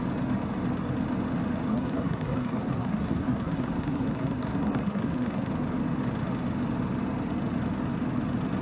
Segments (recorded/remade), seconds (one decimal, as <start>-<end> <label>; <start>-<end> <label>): 0.0-1.7 recorded; 1.7-5.5 remade; 5.5-8.6 recorded